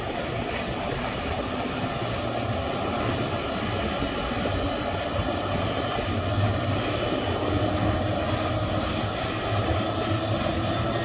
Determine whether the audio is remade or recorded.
recorded